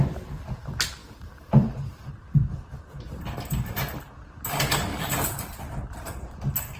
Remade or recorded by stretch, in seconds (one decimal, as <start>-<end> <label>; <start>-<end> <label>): 0.0-1.0 recorded; 1.0-2.9 remade; 2.9-4.9 recorded; 4.9-5.6 remade; 5.6-6.8 recorded